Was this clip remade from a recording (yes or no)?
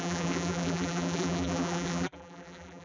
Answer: yes